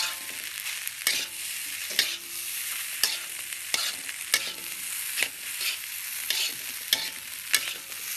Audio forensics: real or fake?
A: real